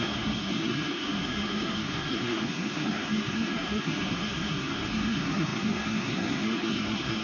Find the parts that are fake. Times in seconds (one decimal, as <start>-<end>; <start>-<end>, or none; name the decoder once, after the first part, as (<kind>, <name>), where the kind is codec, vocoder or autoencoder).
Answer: 0.0-7.2 (codec, SNAC)